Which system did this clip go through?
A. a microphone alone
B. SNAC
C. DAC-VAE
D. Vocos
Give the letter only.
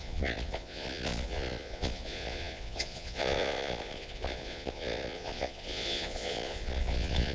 D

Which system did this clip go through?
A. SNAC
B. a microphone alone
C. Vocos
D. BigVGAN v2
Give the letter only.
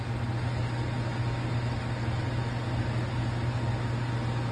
B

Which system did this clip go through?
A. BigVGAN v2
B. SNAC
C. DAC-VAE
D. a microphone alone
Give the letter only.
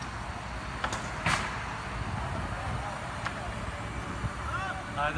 D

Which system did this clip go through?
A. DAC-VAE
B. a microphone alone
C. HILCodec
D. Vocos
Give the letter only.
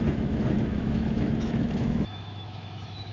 A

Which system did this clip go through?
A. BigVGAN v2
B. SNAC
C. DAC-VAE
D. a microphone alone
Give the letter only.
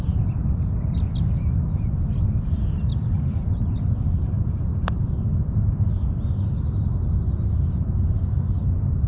D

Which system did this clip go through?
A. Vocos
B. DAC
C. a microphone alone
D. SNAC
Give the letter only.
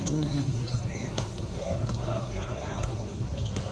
D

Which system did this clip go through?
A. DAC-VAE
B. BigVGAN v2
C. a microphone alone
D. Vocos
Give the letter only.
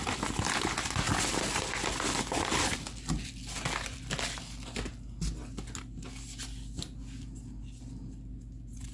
C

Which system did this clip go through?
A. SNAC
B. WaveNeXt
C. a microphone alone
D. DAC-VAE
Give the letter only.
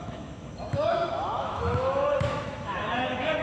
D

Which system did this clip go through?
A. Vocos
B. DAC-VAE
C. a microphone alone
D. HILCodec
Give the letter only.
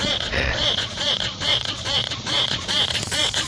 A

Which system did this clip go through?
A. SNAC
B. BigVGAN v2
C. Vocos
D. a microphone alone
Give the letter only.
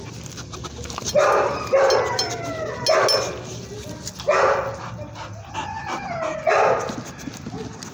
D